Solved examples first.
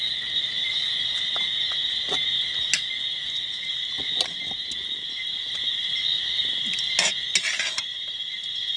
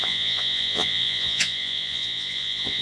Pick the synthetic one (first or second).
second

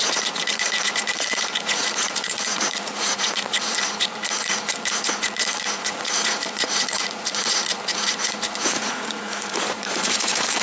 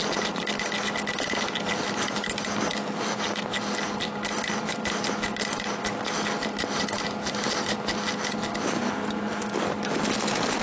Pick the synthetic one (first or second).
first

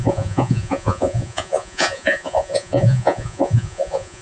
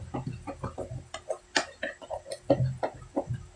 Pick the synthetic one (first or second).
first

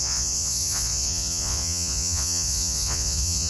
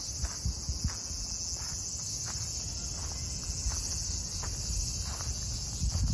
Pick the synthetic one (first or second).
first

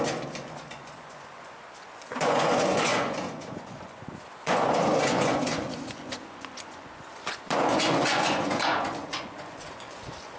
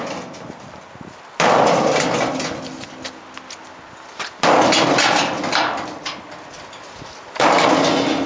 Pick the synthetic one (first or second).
first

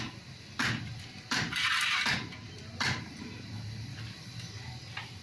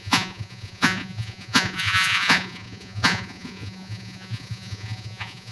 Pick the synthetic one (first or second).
second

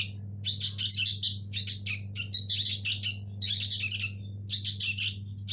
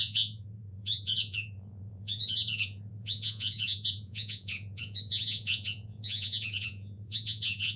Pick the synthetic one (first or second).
second